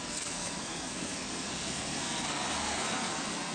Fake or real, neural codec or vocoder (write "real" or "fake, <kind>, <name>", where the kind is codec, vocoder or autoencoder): fake, codec, SNAC